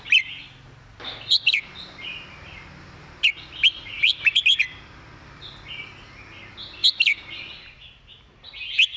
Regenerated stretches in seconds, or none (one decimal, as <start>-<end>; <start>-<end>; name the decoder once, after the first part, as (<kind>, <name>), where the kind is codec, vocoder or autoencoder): 0.9-5.9 (vocoder, BigVGAN v2)